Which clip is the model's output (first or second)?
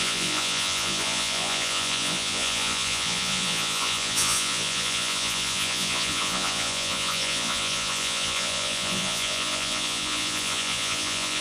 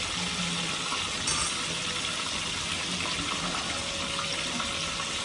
first